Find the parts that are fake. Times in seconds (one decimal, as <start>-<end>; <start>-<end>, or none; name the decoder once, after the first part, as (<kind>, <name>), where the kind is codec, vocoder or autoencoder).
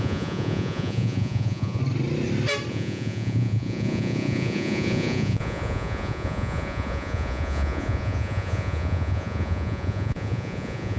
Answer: 0.0-1.8 (vocoder, Vocos); 2.7-11.0